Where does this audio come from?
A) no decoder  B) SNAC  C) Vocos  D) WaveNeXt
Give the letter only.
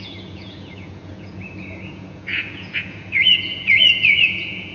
C